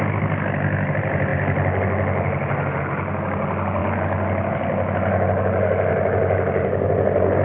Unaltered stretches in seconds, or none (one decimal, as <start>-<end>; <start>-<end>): 0.0-7.4